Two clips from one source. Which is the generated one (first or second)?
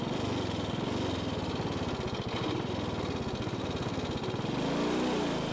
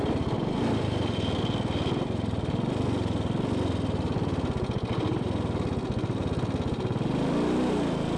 second